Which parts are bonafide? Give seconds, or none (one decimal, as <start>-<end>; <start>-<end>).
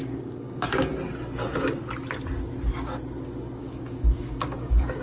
0.9-3.6